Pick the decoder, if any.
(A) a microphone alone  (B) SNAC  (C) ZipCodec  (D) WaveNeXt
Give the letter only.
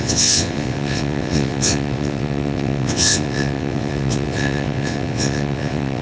D